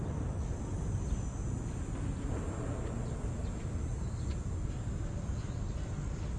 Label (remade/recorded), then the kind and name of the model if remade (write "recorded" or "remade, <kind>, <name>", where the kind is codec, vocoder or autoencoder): recorded